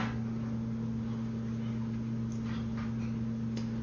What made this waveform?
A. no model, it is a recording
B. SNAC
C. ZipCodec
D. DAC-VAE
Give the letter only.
A